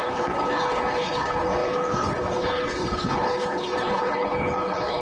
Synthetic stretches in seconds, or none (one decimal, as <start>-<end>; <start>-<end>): 0.0-5.0